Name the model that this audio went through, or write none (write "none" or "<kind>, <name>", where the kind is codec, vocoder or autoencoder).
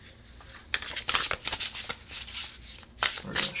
none